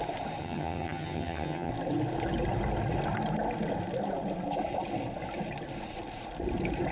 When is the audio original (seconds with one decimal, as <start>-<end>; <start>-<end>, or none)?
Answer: 0.0-0.4; 1.7-6.9